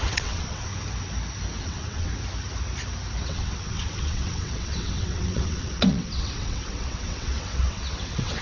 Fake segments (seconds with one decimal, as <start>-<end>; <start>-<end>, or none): 0.0-0.7; 1.6-2.1; 3.2-8.4